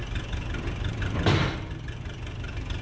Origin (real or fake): real